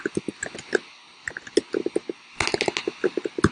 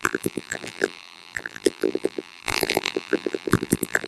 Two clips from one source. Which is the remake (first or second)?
second